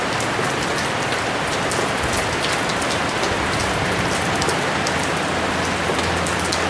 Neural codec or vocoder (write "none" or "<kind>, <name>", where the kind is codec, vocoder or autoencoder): none